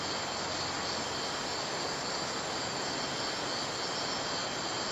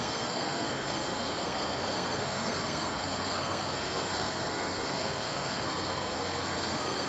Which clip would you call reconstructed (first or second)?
second